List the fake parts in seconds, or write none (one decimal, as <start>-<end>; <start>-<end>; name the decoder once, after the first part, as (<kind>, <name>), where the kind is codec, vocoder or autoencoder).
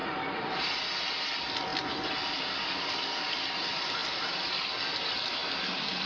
0.0-0.8 (vocoder, BigVGAN v2); 4.0-4.5